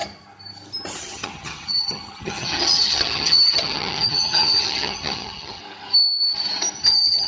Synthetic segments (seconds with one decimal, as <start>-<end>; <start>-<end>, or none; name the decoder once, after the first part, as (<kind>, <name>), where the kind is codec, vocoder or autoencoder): 1.0-5.6 (vocoder, HiFi-GAN); 6.8-7.3